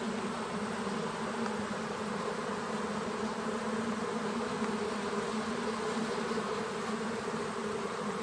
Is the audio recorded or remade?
recorded